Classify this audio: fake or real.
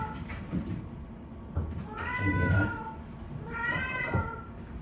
fake